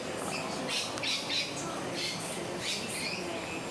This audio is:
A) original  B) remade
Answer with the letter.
A